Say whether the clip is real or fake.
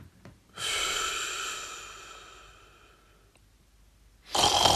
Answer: real